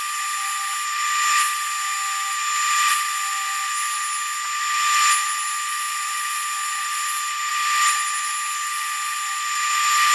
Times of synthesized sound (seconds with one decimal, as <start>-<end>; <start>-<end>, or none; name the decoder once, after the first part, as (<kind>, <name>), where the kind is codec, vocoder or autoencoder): none